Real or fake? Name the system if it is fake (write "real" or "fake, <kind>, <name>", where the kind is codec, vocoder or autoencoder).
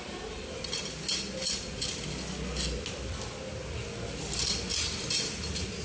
real